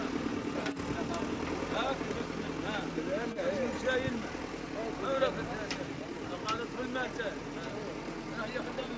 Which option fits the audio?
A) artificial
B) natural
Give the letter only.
B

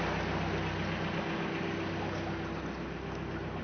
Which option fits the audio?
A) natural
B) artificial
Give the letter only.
A